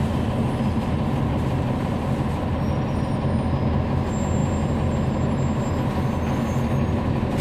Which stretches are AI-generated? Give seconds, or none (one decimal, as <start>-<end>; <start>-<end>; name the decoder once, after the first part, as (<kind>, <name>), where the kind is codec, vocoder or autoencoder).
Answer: none